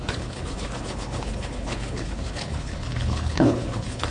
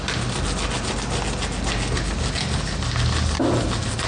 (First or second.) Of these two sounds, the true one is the second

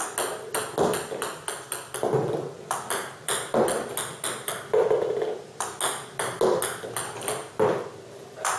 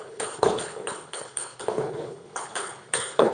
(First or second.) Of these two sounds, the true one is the first